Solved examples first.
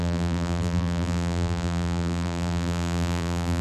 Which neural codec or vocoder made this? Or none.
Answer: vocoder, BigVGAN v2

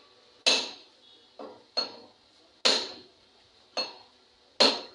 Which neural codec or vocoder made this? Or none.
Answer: none